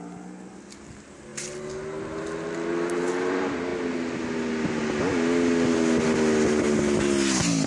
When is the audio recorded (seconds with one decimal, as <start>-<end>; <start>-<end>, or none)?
0.0-7.7